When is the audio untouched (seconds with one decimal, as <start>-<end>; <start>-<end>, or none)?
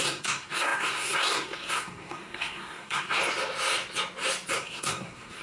3.2-4.5